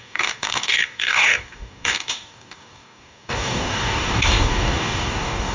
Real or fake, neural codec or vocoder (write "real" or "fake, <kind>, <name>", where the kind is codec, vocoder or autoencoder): fake, codec, DAC